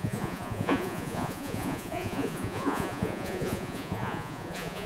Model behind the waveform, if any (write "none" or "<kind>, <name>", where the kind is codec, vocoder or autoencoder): vocoder, Vocos